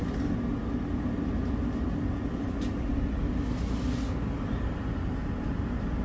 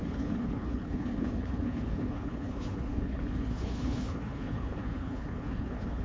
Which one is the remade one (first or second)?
second